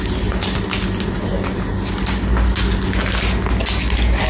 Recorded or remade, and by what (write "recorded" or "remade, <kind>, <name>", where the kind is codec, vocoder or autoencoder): recorded